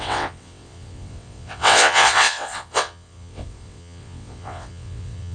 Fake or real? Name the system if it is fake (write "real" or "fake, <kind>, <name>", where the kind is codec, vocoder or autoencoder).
fake, vocoder, WaveNeXt